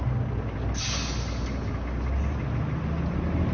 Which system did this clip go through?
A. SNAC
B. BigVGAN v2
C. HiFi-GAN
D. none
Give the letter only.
D